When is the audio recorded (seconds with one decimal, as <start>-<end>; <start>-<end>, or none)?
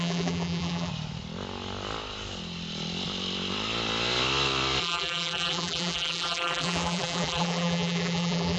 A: 0.9-4.8